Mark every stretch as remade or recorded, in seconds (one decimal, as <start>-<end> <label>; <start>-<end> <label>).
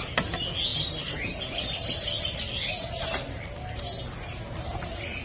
0.0-5.2 recorded